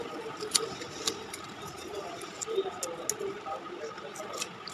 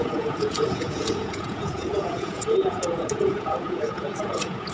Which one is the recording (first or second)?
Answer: first